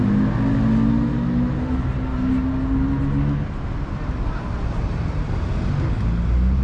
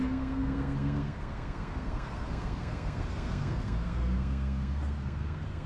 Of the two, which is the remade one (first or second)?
second